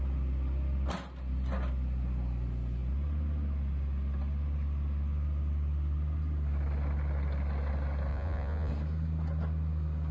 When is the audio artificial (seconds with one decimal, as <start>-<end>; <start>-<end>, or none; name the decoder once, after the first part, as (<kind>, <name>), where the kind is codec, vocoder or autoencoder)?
8.1-8.7 (vocoder, Vocos)